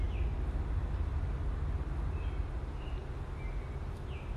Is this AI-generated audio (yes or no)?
no